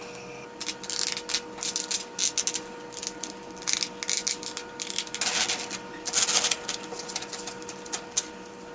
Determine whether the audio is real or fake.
real